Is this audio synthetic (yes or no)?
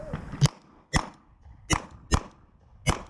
no